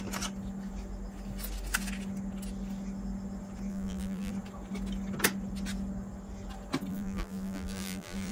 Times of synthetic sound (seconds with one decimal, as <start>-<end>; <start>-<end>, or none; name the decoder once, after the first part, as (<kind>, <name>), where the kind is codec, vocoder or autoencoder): 3.7-4.3 (vocoder, BigVGAN v2); 6.9-8.3